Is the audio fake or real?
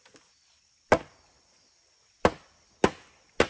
real